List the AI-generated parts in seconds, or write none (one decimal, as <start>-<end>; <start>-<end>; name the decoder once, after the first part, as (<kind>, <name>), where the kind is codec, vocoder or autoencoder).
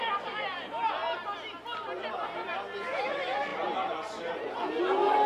none